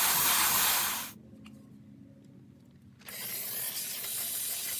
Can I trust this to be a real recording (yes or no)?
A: yes